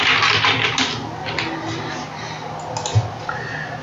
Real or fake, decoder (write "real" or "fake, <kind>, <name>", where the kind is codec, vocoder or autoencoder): real